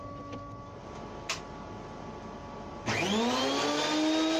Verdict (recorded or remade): recorded